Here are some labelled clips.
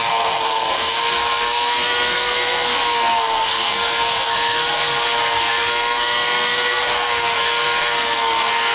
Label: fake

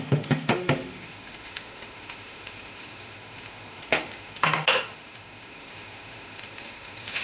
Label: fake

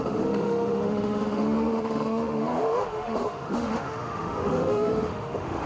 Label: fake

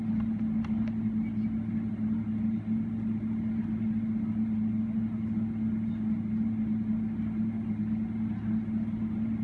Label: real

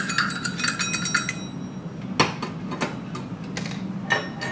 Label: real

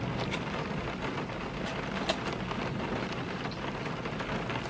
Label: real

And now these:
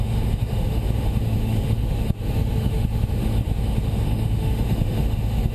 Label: fake